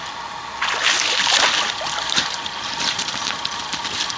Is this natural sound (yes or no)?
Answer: yes